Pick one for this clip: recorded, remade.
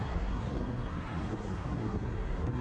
remade